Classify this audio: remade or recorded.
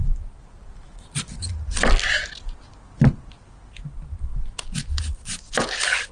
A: recorded